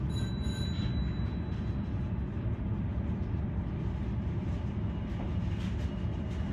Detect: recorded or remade recorded